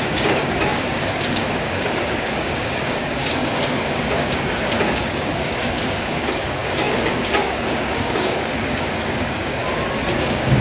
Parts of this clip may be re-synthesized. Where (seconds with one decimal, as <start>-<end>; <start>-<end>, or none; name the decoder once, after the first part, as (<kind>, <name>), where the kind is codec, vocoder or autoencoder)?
0.0-9.6 (codec, DAC); 10.2-10.6